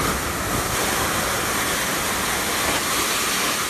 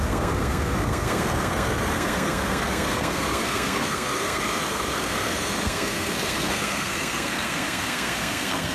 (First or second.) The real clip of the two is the first